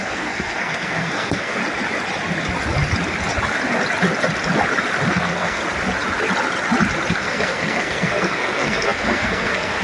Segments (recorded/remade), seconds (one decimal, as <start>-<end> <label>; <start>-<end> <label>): 0.0-1.6 remade; 1.6-5.1 recorded; 5.1-5.6 remade; 5.6-7.1 recorded; 7.1-9.8 remade